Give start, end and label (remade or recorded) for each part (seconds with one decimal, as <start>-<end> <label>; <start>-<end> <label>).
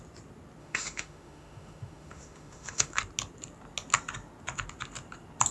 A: 0.0-0.6 recorded; 0.6-3.0 remade; 3.0-5.5 recorded